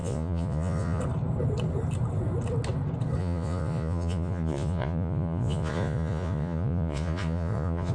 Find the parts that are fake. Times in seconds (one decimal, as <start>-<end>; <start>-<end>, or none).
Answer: 0.0-1.0; 3.2-7.9